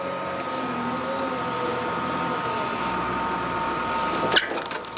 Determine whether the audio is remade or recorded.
recorded